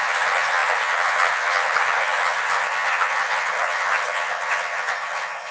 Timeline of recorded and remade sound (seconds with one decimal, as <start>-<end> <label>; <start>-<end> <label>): 0.0-5.5 remade